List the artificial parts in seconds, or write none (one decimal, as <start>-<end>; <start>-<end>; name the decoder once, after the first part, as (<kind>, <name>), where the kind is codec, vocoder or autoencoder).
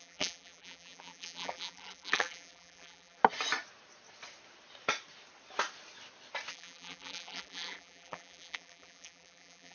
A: 0.0-3.2 (vocoder, BigVGAN v2); 6.5-9.7